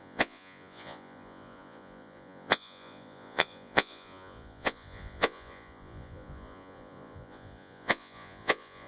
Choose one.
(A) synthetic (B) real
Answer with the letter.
A